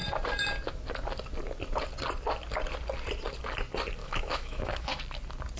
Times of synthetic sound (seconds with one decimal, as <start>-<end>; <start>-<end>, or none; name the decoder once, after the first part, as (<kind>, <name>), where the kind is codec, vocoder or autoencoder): 4.0-5.0 (autoencoder, DAC-VAE)